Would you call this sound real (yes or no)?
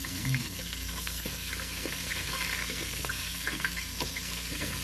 no